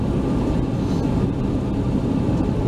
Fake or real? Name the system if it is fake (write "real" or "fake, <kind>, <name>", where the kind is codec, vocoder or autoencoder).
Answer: real